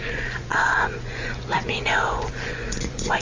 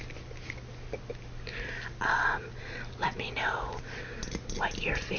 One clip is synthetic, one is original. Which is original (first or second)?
second